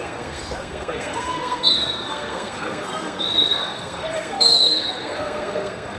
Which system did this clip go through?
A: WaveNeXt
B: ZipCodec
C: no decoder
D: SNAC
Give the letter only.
D